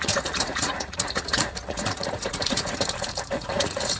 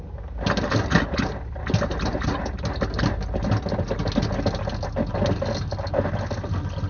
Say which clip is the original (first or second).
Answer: second